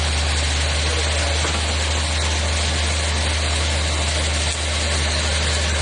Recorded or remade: recorded